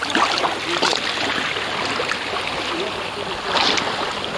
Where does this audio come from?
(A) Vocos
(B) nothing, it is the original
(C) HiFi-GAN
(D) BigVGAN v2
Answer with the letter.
B